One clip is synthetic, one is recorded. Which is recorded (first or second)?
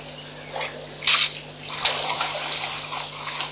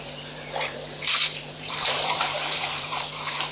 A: first